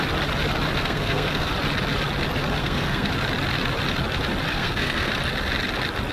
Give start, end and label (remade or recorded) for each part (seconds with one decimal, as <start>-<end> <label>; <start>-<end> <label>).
0.0-0.8 recorded; 0.8-1.5 remade; 1.5-2.6 recorded; 2.6-3.1 remade; 3.1-4.5 recorded; 4.5-5.1 remade; 5.1-6.1 recorded